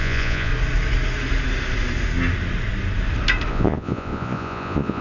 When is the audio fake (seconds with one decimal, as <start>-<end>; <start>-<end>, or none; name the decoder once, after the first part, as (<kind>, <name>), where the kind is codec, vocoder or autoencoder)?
0.0-0.5 (vocoder, Vocos); 3.5-5.0